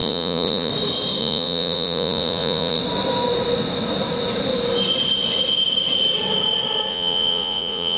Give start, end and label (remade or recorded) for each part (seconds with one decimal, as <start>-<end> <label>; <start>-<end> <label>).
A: 0.0-0.7 remade; 0.7-1.2 recorded; 1.2-2.8 remade; 2.8-6.9 recorded; 6.9-8.0 remade

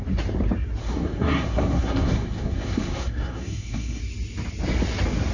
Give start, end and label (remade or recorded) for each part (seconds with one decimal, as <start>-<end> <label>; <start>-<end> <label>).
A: 0.0-0.8 recorded; 0.8-4.0 remade; 4.0-5.3 recorded

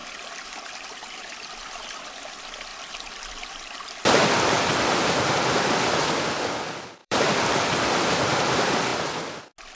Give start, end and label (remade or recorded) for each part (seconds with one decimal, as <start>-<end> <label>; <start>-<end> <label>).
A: 0.0-7.0 recorded; 7.0-7.5 remade; 7.5-9.8 recorded